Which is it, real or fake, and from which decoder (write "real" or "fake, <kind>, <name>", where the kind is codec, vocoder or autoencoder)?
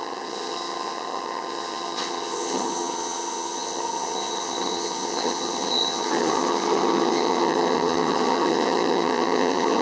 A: fake, vocoder, HiFi-GAN